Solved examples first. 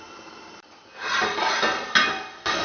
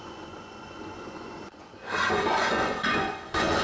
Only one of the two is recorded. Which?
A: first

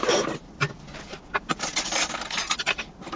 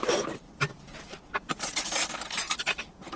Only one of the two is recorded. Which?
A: first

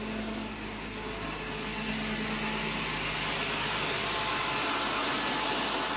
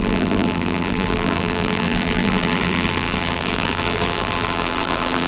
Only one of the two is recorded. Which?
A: first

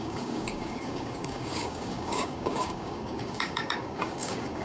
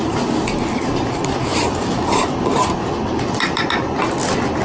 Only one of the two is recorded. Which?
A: second